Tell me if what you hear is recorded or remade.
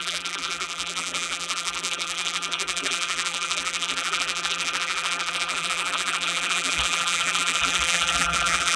remade